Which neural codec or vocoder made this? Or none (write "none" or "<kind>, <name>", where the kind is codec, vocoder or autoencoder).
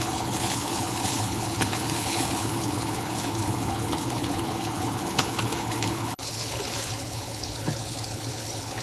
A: codec, HILCodec